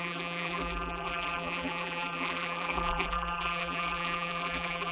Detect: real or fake fake